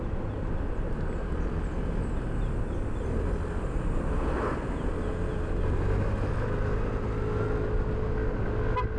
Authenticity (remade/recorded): recorded